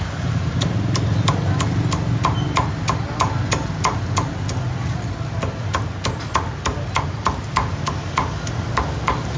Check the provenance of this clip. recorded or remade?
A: recorded